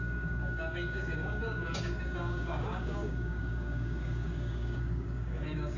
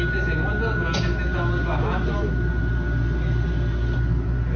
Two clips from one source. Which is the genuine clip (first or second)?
second